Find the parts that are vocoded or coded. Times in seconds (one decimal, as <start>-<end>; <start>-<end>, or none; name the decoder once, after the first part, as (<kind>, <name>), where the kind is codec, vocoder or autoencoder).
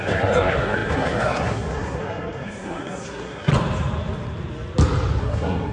0.0-3.5 (codec, SNAC); 5.2-5.7